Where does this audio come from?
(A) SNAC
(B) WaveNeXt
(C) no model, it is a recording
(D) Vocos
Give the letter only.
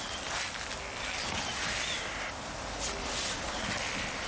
C